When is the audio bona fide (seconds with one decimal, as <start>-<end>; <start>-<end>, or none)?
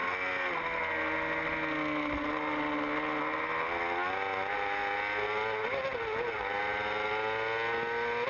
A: 0.0-8.3